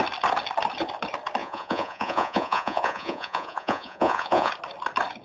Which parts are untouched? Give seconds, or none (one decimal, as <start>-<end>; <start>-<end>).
0.0-1.4; 4.5-5.2